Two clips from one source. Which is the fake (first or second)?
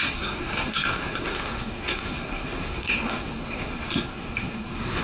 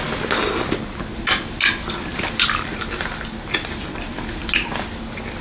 first